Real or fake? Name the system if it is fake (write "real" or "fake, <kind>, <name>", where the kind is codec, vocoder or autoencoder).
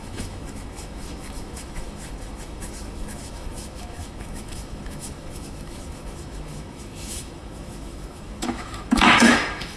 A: fake, autoencoder, DAC-VAE